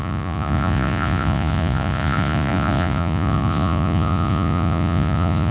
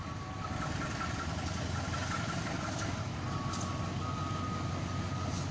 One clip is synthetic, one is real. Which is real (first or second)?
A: second